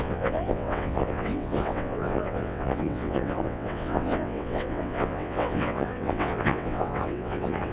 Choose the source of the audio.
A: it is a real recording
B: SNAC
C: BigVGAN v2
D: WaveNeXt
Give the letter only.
D